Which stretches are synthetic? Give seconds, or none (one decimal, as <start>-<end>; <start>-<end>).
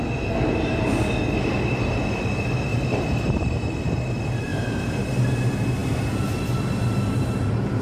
2.7-3.7; 4.5-5.0